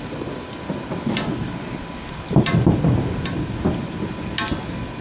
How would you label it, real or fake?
real